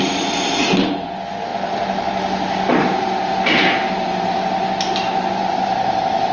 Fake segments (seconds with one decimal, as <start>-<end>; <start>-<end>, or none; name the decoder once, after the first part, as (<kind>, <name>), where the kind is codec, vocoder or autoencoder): none